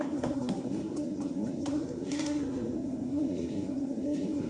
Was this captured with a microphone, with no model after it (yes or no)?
no